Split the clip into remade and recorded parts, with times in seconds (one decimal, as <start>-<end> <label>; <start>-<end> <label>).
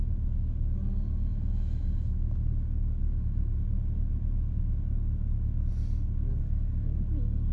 0.0-7.5 recorded